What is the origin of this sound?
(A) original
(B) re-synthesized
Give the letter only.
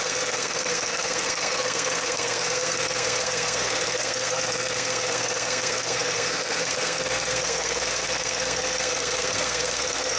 B